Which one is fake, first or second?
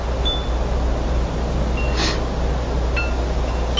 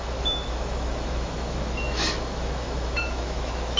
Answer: second